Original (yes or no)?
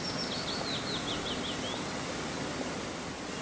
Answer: yes